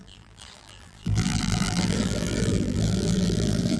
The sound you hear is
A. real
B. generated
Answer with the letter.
B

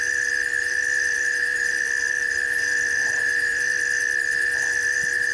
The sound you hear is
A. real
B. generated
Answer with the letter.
B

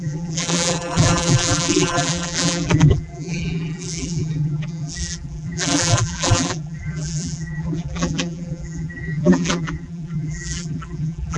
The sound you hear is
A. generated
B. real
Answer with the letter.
A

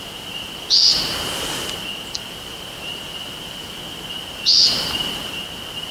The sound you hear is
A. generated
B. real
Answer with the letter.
A